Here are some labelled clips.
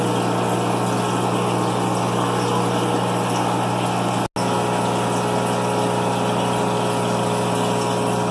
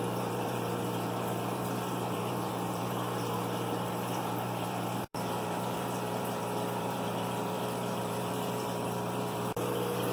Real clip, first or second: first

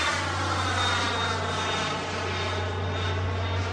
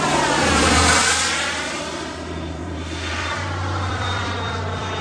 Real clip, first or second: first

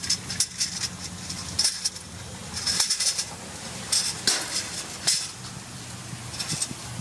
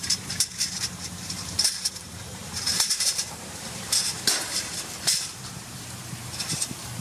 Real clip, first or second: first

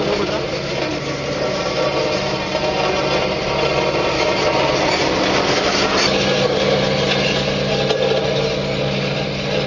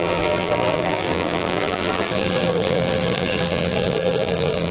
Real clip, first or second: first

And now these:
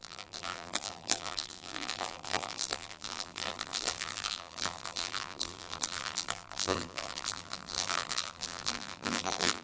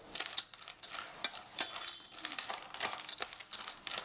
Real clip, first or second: second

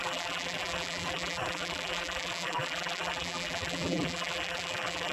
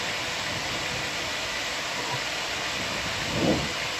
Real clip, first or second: second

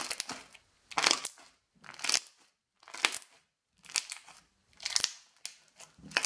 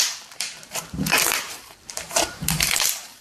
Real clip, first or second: first